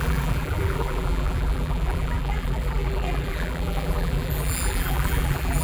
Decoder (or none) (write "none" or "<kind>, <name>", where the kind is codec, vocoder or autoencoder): vocoder, BigVGAN v2